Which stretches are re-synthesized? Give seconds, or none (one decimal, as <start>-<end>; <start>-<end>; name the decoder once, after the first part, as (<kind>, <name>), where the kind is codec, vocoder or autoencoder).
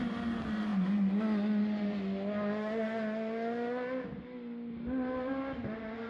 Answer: none